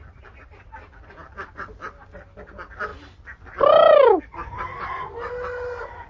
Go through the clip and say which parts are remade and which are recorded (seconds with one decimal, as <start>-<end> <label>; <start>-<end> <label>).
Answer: 0.0-6.1 recorded